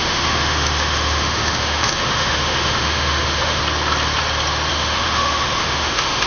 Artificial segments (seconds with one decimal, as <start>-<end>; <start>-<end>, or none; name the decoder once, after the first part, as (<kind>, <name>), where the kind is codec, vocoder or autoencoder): 0.0-3.6 (autoencoder, DAC-VAE); 4.7-6.3